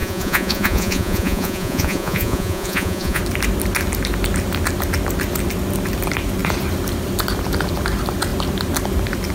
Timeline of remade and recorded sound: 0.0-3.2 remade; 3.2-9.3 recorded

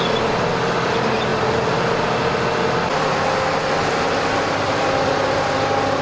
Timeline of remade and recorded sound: 0.0-6.0 recorded